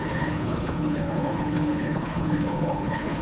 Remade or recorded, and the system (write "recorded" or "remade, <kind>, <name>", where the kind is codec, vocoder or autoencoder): remade, codec, HILCodec